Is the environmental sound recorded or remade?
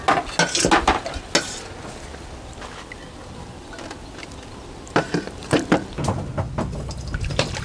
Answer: recorded